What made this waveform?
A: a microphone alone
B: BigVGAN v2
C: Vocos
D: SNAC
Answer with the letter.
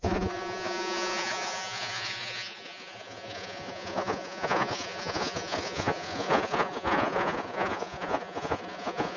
C